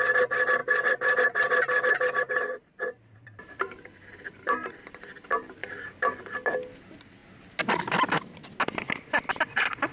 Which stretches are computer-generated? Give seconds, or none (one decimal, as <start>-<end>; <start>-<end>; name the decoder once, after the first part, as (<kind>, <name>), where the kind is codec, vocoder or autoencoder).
0.6-4.7 (vocoder, BigVGAN v2); 5.6-6.2